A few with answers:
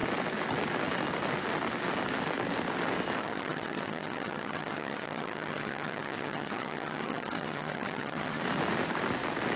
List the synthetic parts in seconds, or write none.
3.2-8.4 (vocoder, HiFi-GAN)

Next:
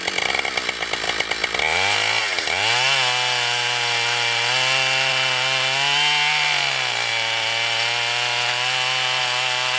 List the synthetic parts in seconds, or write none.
none

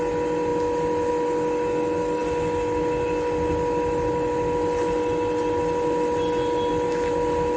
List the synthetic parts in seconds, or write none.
none

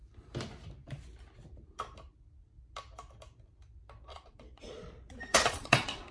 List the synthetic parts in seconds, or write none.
4.1-6.1 (vocoder, Vocos)

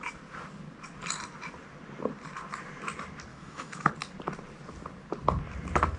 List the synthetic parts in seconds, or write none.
3.3-3.9 (autoencoder, DAC-VAE)